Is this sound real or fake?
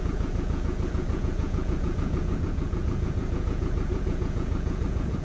fake